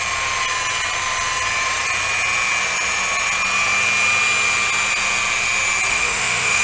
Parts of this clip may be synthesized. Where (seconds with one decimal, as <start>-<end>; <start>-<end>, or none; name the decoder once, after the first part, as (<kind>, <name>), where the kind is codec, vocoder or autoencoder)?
5.9-6.6 (autoencoder, DAC-VAE)